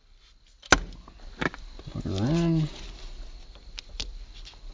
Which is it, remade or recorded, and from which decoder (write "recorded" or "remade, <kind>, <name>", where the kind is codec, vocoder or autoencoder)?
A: recorded